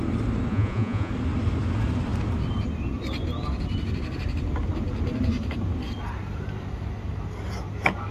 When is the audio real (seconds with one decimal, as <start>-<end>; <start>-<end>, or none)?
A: 0.0-0.5; 1.1-8.1